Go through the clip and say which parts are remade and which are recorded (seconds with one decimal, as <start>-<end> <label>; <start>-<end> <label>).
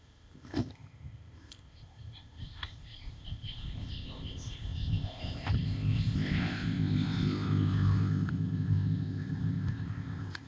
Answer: 0.0-10.5 remade